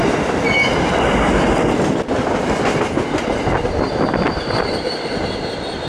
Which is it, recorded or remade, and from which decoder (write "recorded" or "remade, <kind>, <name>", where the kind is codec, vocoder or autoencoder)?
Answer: recorded